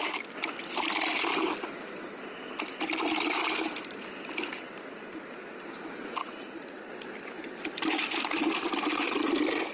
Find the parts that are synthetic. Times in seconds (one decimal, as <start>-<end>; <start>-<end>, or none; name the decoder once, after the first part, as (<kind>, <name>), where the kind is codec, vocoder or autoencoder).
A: 6.2-6.9 (vocoder, Vocos)

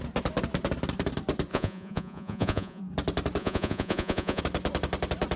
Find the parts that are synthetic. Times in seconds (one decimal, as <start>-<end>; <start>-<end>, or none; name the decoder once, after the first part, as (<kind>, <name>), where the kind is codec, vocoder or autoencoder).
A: 1.5-2.8 (vocoder, Vocos); 3.4-4.4